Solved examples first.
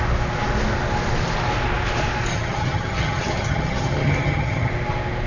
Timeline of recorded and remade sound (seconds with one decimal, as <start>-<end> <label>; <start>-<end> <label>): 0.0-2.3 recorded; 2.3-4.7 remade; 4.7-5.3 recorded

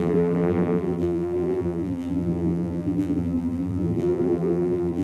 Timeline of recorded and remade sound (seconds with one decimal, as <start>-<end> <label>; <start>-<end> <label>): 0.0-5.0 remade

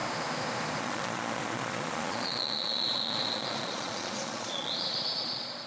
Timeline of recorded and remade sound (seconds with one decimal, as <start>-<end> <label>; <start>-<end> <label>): 0.0-0.8 recorded; 0.8-5.7 remade